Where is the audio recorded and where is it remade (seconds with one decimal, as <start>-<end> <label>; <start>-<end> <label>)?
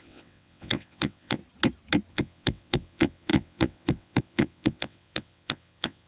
0.0-1.4 remade; 1.4-2.1 recorded; 2.1-6.1 remade